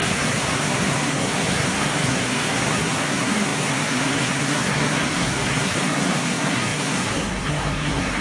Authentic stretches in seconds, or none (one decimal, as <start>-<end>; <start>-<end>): none